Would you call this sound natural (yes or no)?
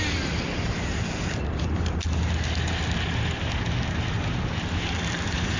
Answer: yes